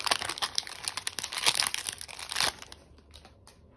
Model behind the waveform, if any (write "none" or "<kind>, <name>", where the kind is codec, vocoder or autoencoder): none